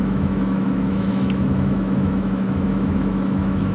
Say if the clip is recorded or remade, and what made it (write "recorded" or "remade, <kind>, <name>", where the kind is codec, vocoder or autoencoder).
remade, autoencoder, DAC-VAE